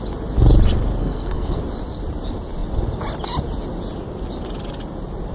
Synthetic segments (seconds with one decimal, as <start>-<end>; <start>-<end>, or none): 1.0-1.6